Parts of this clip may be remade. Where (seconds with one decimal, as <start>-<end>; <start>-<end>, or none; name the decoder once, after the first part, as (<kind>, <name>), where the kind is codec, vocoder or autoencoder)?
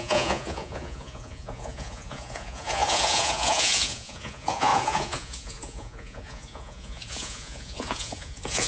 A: 0.0-8.7 (vocoder, Vocos)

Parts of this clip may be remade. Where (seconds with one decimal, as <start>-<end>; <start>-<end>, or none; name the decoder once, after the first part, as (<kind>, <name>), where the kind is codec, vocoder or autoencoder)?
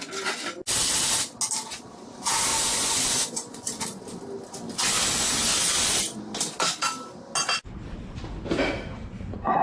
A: 2.5-3.8 (vocoder, Vocos)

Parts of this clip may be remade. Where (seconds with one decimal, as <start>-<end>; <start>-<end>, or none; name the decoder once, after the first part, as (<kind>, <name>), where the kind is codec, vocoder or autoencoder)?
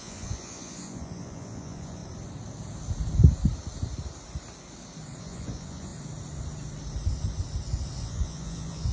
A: 0.0-2.0 (vocoder, Vocos); 5.2-5.9; 8.0-8.9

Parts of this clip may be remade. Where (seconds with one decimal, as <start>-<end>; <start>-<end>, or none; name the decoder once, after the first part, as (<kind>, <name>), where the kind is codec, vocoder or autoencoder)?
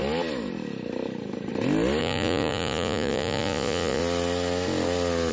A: 2.0-4.0 (vocoder, Vocos)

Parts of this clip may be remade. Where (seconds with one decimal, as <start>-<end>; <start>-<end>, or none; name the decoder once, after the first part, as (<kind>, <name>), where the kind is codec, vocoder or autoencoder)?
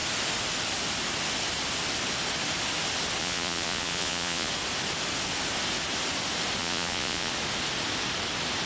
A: 3.2-4.5 (vocoder, Vocos); 6.6-7.3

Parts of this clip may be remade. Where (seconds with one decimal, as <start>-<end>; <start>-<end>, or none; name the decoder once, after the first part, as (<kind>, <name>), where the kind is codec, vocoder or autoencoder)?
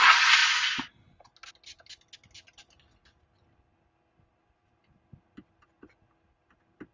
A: none